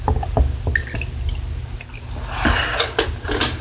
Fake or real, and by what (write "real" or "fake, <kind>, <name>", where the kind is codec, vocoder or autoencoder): real